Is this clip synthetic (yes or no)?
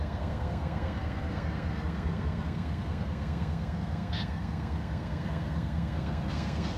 yes